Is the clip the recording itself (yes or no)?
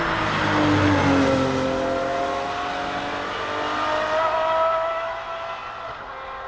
yes